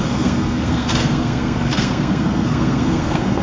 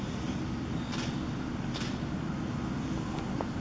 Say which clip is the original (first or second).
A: second